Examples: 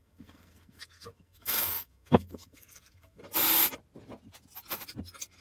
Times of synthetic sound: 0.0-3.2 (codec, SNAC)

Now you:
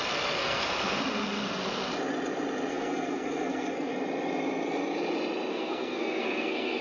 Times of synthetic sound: 0.4-1.0 (codec, SNAC); 2.7-3.9; 5.5-6.8

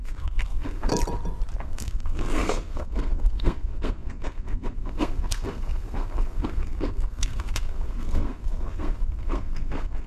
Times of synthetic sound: 0.0-0.9 (codec, SNAC); 1.6-10.1

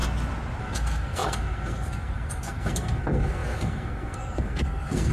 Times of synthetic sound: 0.6-5.1 (codec, SNAC)

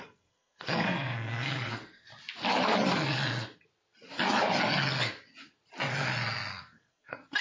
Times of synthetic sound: 0.0-2.1 (codec, SNAC); 6.5-7.4

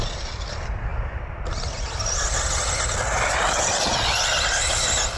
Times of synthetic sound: none

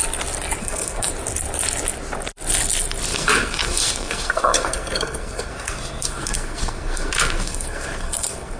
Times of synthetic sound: 0.6-1.1 (codec, SNAC); 3.1-8.6